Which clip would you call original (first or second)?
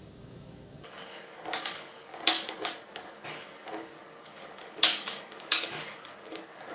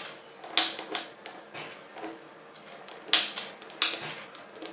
second